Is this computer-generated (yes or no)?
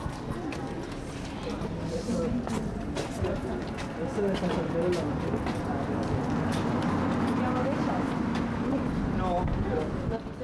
no